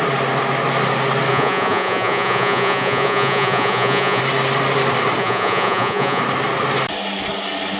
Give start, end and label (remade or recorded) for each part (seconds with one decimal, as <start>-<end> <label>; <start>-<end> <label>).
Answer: 0.0-1.3 recorded; 1.3-4.2 remade; 4.2-5.2 recorded; 5.2-6.2 remade; 6.2-7.8 recorded